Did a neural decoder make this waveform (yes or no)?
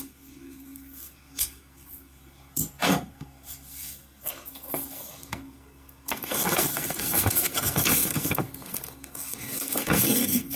yes